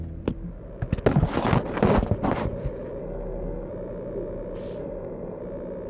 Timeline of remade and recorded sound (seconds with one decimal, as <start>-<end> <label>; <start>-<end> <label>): 0.0-3.0 recorded; 3.0-3.7 remade; 3.7-4.8 recorded; 4.8-5.4 remade; 5.4-5.9 recorded